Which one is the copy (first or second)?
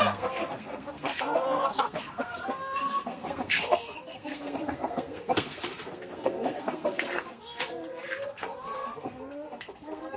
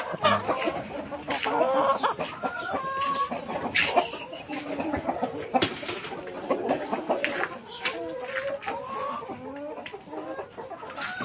first